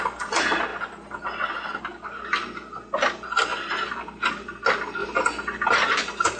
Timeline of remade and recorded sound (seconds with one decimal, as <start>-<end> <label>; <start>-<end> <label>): 0.0-6.4 recorded

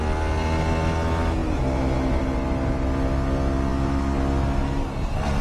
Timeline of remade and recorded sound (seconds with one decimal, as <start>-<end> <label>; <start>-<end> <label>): 0.0-5.4 recorded

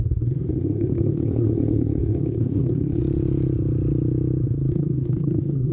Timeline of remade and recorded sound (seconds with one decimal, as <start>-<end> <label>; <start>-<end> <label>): 0.0-3.0 remade; 3.0-4.7 recorded; 4.7-5.7 remade

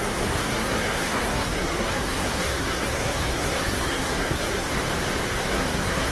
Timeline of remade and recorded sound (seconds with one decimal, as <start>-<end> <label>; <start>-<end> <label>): 0.0-4.7 remade; 4.7-5.4 recorded; 5.4-6.1 remade